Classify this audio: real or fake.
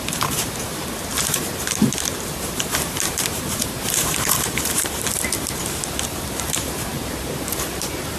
fake